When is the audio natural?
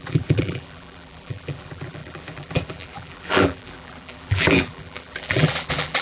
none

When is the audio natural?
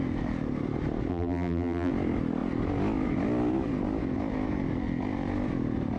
0.0-1.1; 1.9-6.0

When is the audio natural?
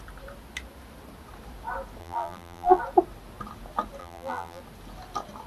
0.0-2.0; 2.8-4.0; 4.6-5.5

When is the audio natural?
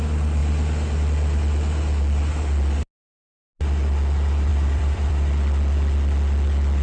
0.0-4.5; 5.1-6.8